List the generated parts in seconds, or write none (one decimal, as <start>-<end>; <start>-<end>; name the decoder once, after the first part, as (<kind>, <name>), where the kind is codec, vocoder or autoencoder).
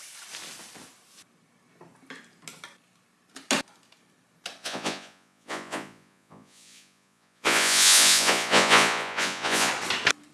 4.6-9.7 (vocoder, Vocos)